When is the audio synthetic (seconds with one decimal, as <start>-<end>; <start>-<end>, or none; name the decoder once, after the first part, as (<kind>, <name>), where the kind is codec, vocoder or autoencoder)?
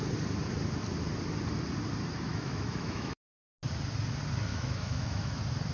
2.3-3.2 (autoencoder, DAC-VAE); 4.5-5.3